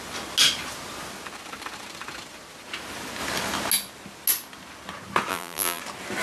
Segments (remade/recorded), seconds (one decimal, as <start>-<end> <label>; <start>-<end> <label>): 0.0-5.3 recorded; 5.3-5.8 remade; 5.8-6.2 recorded

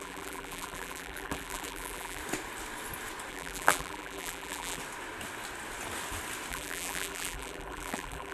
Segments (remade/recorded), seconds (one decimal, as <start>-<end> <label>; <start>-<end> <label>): 0.0-2.2 remade; 2.2-3.3 recorded; 3.3-4.8 remade; 4.8-6.5 recorded; 6.5-8.3 remade